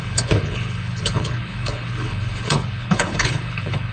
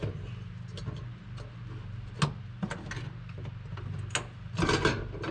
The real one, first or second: second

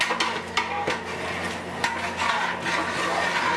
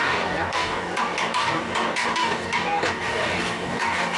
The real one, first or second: first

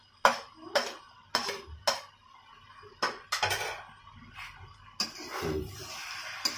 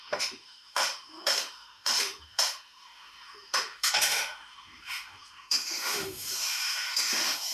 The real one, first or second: first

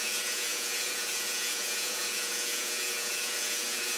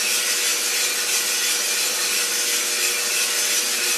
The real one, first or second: second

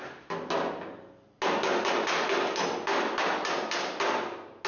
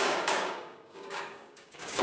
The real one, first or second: first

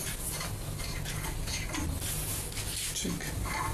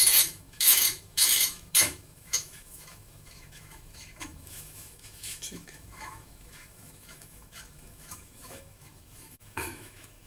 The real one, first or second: first